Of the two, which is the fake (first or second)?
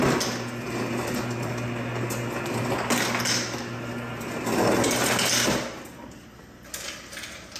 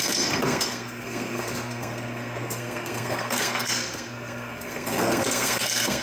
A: second